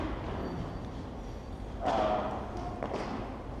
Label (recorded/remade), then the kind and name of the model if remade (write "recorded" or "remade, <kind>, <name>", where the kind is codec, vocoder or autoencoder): recorded